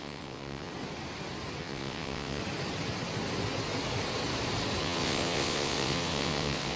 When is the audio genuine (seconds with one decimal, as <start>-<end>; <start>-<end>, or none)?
0.7-1.6; 2.4-4.8